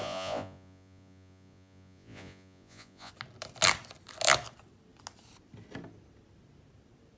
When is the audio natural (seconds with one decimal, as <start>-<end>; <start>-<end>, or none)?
3.1-7.2